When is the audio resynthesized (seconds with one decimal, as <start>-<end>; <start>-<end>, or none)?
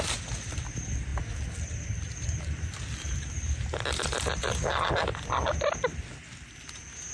none